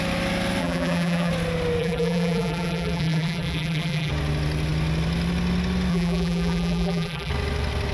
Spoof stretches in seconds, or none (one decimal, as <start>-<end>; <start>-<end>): 0.6-1.3; 1.8-4.1; 5.9-7.3